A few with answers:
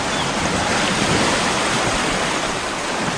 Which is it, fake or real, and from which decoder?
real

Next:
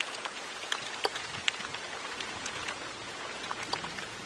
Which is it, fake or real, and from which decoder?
fake, vocoder, Vocos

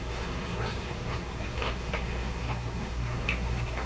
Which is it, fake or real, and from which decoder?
fake, codec, SNAC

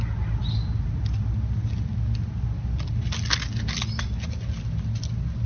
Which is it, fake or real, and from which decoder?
real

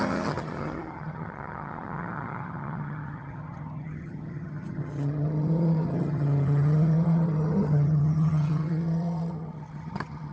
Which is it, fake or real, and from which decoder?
fake, vocoder, HiFi-GAN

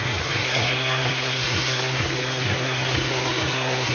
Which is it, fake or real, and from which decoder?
fake, codec, SNAC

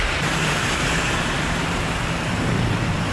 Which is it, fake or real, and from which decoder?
fake, vocoder, BigVGAN v2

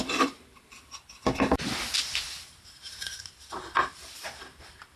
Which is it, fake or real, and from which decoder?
fake, vocoder, BigVGAN v2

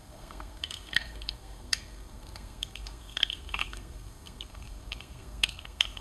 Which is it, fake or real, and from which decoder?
fake, codec, SNAC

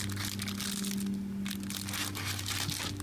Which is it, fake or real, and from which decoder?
real